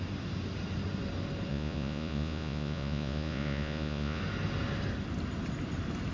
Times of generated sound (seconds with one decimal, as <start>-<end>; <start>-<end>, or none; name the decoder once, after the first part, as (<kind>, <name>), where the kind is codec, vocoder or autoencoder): 1.5-4.2 (vocoder, Vocos)

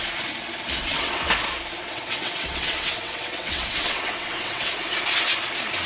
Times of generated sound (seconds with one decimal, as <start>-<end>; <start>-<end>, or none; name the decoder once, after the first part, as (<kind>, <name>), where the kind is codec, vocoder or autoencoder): 0.8-1.3 (vocoder, WaveNeXt); 1.8-4.7

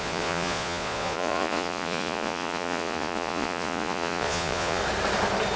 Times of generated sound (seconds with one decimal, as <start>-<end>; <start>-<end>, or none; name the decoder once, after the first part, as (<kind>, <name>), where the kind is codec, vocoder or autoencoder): 0.0-4.8 (vocoder, Vocos)